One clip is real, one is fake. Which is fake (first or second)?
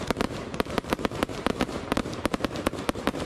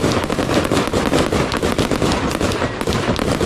first